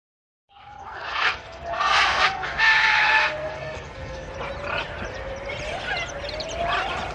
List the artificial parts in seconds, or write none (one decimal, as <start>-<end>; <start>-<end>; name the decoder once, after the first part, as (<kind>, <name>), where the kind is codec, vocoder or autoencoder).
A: 0.0-4.3 (codec, SNAC)